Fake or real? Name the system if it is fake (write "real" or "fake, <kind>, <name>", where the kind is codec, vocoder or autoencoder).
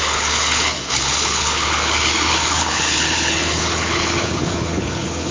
fake, codec, HILCodec